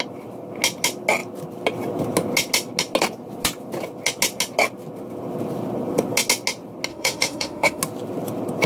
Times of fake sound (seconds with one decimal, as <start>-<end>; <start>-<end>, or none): 6.9-7.8